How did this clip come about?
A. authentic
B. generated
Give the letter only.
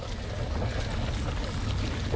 A